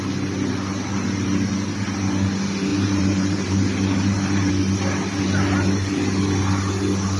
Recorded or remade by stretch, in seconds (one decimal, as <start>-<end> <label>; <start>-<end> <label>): 0.0-2.7 recorded; 2.7-4.5 remade; 4.5-7.2 recorded